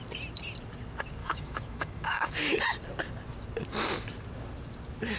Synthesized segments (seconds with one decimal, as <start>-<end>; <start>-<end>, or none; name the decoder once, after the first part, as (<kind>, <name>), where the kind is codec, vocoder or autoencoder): 1.2-2.6 (autoencoder, DAC-VAE)